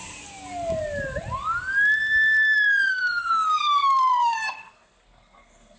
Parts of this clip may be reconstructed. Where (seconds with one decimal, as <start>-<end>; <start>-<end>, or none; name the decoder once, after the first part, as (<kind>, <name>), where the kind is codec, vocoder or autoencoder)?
2.9-5.8 (codec, SNAC)